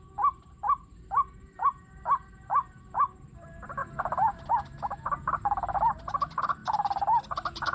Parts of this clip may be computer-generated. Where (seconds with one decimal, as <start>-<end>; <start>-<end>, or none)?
none